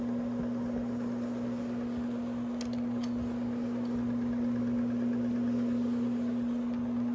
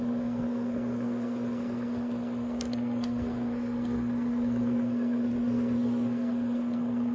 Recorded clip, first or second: first